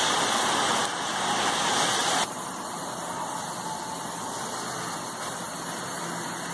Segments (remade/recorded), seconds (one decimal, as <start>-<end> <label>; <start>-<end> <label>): 0.0-6.5 recorded